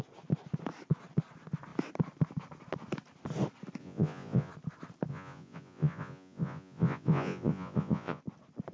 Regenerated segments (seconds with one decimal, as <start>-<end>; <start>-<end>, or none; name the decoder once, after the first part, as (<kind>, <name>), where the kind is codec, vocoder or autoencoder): 3.8-4.5 (vocoder, Vocos); 5.1-8.2